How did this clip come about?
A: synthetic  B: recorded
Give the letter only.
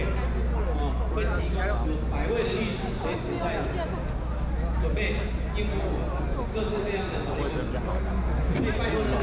B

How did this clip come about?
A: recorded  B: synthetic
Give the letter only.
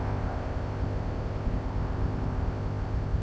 B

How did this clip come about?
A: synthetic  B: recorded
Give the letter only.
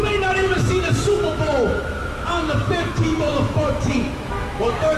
A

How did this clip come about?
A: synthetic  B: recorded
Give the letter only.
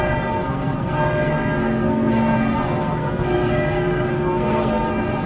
A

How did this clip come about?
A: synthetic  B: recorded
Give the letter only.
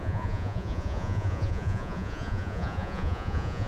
A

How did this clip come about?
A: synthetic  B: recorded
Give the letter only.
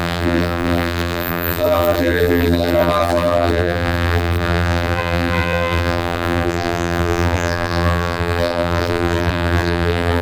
A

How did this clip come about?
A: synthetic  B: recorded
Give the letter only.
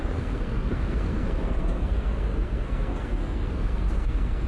A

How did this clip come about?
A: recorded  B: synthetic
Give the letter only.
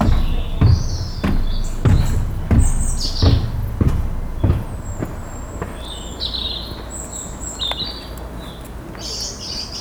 A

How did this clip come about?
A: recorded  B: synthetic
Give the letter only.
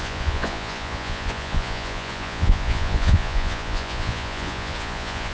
B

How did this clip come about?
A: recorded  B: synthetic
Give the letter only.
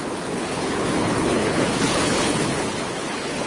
B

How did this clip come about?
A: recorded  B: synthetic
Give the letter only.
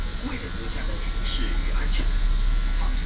A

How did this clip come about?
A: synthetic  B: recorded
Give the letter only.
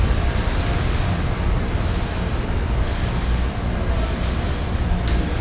B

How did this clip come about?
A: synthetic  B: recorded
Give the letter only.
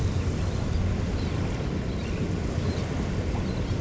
B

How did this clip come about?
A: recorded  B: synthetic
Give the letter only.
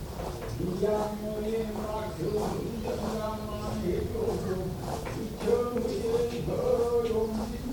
B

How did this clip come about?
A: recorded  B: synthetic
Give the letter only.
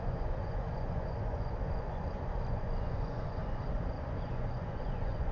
B